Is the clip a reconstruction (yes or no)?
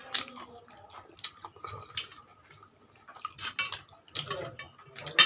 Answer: no